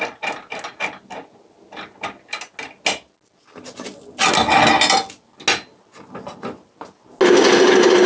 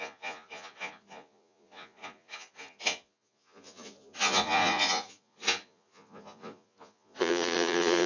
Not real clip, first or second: second